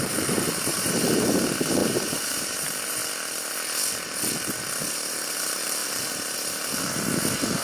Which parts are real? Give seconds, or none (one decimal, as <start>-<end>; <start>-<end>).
3.0-4.8